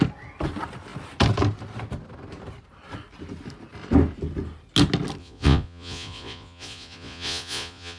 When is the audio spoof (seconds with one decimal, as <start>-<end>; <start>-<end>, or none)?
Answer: 5.2-8.0